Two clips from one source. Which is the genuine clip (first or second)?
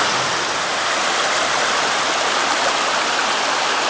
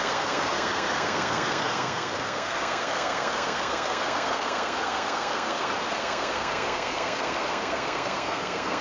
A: first